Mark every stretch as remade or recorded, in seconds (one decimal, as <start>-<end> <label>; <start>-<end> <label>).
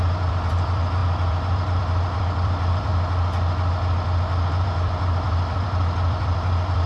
0.0-2.9 remade; 2.9-4.5 recorded; 4.5-6.9 remade